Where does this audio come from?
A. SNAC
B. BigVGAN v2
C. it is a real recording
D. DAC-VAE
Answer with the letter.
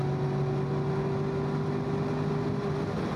C